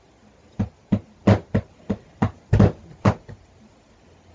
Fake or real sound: real